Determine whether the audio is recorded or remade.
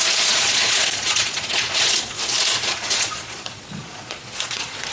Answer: remade